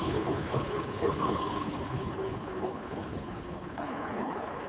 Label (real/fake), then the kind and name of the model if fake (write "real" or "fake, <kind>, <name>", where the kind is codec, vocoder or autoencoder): fake, codec, HILCodec